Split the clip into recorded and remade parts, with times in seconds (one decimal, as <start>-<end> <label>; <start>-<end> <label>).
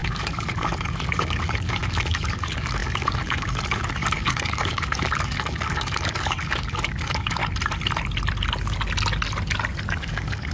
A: 0.0-7.4 remade; 7.4-9.9 recorded; 9.9-10.5 remade